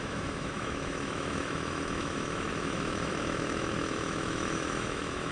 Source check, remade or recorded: remade